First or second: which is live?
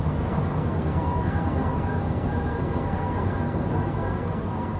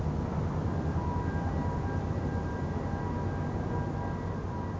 second